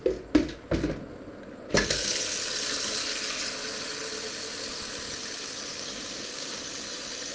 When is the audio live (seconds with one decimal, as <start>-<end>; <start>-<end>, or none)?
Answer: 0.0-5.7; 6.6-7.3